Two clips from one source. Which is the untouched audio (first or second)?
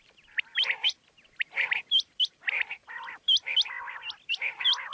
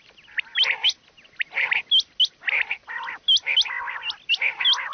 second